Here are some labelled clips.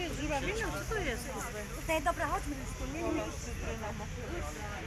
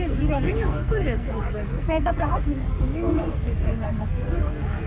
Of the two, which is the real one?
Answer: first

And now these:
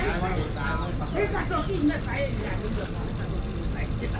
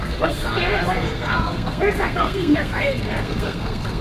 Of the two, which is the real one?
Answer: first